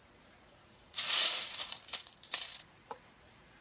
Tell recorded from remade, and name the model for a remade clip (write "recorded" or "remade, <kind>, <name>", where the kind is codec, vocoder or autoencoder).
remade, vocoder, Vocos